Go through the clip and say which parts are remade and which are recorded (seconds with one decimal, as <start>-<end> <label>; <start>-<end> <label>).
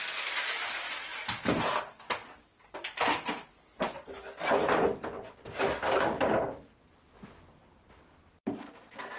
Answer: 0.0-9.2 recorded